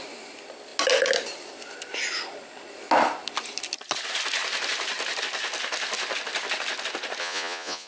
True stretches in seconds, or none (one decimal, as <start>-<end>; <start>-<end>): 0.0-7.2